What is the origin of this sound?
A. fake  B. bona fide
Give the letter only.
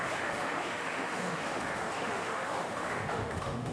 A